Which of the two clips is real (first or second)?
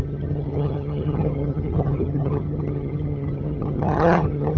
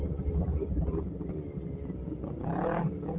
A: second